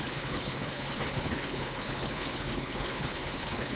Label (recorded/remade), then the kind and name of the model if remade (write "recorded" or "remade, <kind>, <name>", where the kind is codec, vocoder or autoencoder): remade, codec, HILCodec